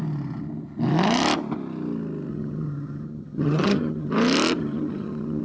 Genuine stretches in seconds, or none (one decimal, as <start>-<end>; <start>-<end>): 0.0-2.3; 4.1-4.6